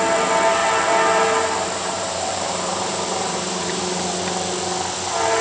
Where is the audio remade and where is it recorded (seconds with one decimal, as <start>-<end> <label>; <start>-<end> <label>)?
0.0-0.6 recorded; 0.6-3.8 remade; 3.8-5.4 recorded